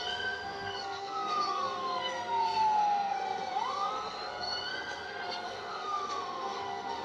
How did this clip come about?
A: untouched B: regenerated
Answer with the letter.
B